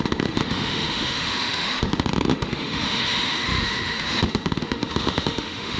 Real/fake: fake